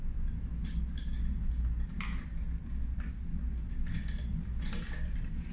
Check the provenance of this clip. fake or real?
real